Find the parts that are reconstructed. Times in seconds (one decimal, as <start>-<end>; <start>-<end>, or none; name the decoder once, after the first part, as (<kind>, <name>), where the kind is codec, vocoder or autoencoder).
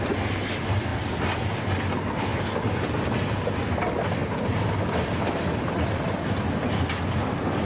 none